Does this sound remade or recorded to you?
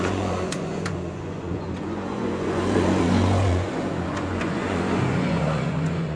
remade